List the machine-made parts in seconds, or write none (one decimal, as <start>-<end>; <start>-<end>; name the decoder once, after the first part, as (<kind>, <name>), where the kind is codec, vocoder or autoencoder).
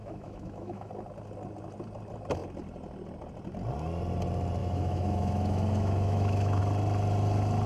0.0-0.9 (autoencoder, DAC-VAE); 4.6-6.6